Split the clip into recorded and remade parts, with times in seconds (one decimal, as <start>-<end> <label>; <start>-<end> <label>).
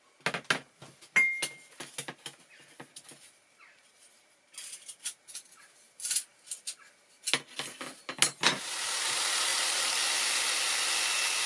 0.0-11.5 recorded